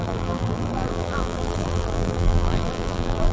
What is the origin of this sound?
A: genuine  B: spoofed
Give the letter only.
B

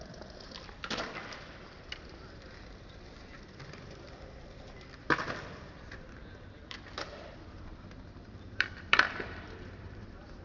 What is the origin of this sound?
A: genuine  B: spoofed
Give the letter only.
B